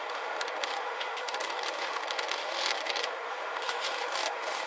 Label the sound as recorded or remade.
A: remade